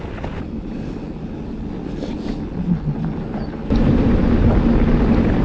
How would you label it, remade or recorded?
recorded